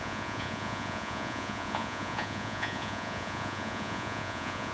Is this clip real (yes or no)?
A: no